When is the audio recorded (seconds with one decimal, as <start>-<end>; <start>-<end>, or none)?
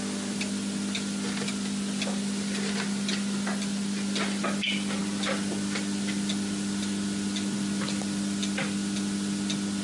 0.0-9.8